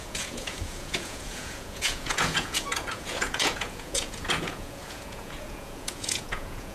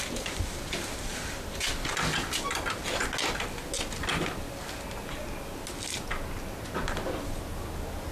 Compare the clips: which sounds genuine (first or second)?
second